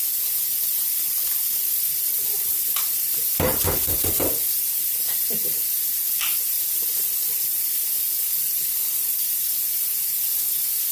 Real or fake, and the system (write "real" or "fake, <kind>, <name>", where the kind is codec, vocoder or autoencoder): real